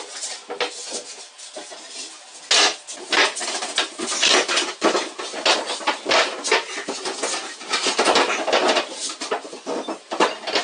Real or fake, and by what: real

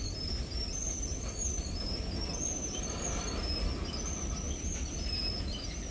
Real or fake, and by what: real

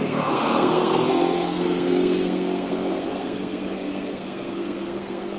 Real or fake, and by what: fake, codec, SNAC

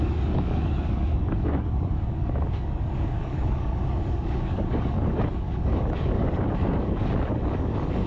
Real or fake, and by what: fake, codec, DAC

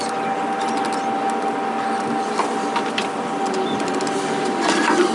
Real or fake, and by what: real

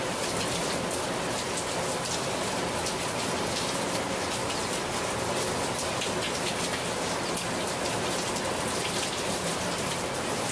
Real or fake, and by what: real